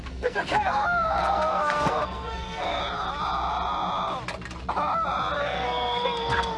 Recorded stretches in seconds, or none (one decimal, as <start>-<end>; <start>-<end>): 2.8-5.4